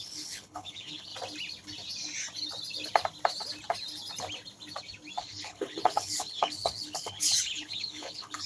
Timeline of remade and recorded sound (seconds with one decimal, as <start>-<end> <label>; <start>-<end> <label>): 0.0-1.1 remade; 1.1-5.2 recorded; 5.2-8.5 remade